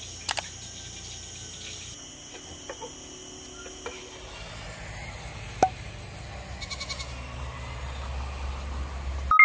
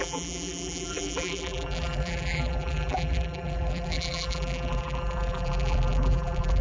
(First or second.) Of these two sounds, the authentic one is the first